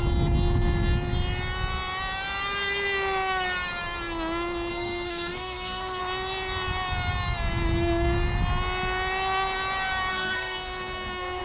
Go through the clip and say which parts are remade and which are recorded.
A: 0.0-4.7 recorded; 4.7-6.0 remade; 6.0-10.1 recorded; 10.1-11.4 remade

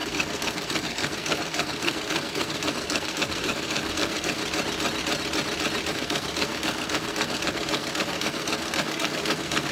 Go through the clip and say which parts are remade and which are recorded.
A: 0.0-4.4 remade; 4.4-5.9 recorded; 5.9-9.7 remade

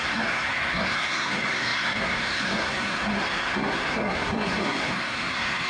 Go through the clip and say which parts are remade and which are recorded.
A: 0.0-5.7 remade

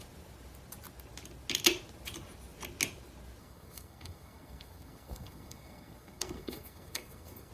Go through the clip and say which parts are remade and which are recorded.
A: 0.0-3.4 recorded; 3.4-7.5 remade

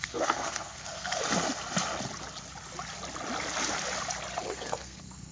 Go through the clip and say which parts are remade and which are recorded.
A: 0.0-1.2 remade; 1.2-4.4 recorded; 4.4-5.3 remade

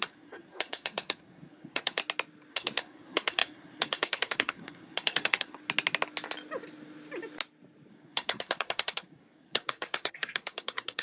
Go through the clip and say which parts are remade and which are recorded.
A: 0.0-2.0 remade; 2.0-2.5 recorded; 2.5-5.6 remade; 5.6-7.9 recorded; 7.9-11.0 remade

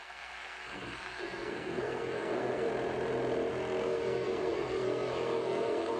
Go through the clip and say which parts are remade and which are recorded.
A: 0.0-2.7 remade; 2.7-3.8 recorded; 3.8-6.0 remade

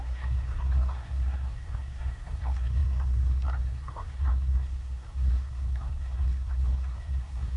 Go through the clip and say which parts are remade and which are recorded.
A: 0.0-7.6 remade